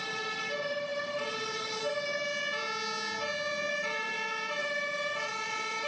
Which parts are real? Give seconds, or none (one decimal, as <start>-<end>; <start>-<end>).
2.3-3.7